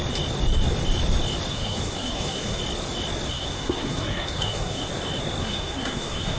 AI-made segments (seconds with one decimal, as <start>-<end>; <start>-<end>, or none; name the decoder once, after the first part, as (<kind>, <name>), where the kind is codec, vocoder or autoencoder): 1.5-2.6 (codec, SNAC); 3.3-4.9; 5.4-6.4